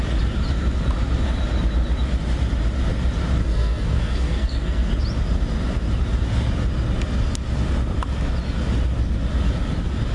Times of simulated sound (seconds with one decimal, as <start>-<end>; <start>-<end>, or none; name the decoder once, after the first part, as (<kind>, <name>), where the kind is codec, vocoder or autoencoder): 3.4-4.9 (codec, SNAC)

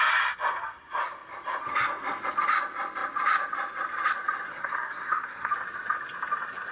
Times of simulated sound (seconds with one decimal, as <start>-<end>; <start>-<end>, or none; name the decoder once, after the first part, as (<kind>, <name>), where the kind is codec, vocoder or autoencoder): 4.5-5.5 (codec, SNAC)

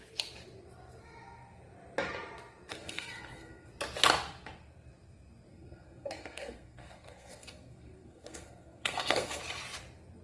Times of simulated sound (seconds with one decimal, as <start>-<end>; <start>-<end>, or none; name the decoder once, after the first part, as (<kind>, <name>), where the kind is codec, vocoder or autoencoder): 2.7-3.7 (codec, SNAC); 5.5-9.4

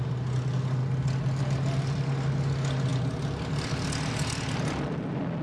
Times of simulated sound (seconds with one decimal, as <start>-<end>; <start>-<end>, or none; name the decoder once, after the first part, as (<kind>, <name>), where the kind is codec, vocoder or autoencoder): none